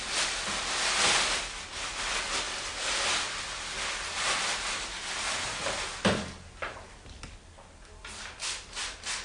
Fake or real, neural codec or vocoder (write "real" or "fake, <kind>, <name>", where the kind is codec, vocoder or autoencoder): real